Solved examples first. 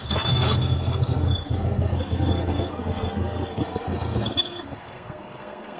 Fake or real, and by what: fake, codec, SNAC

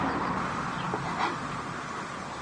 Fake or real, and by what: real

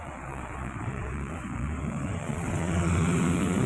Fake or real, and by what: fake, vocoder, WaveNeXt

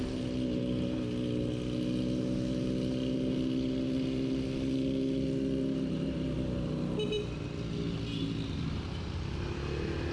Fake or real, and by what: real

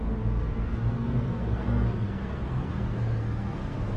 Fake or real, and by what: fake, codec, SNAC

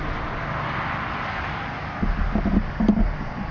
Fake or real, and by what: real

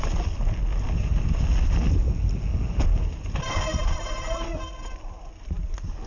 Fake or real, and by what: real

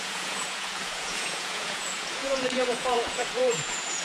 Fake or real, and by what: fake, vocoder, Vocos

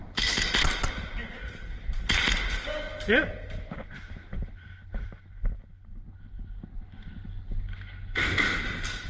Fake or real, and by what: real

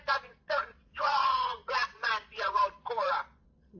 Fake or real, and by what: fake, vocoder, Vocos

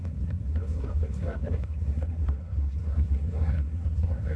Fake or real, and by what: fake, codec, SNAC